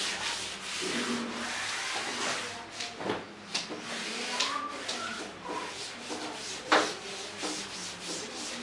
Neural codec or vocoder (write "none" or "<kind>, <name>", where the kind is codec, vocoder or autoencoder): none